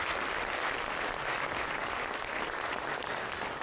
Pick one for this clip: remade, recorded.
recorded